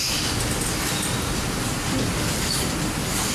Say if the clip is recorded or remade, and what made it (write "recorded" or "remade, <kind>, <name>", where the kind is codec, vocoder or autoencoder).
recorded